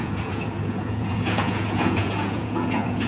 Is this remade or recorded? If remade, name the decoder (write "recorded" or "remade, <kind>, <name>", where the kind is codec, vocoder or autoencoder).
remade, vocoder, Vocos